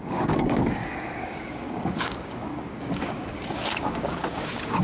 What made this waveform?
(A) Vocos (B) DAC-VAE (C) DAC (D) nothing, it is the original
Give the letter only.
C